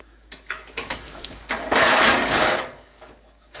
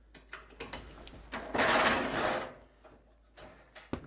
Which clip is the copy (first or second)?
first